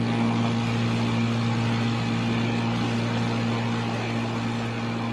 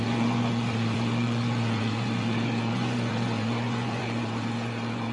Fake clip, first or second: second